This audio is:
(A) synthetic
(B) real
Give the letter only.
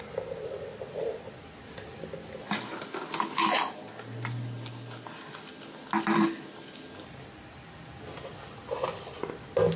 B